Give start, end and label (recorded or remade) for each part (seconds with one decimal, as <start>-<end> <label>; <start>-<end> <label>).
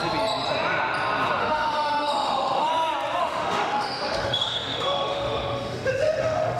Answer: 0.0-1.4 recorded; 1.4-2.7 remade; 2.7-3.2 recorded; 3.2-6.6 remade